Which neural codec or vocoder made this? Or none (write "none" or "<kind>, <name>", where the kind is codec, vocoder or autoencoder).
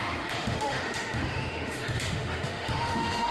autoencoder, DAC-VAE